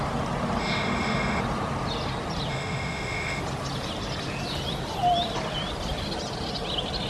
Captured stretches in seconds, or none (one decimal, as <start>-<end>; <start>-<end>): 0.0-0.6; 1.4-2.5; 3.4-7.1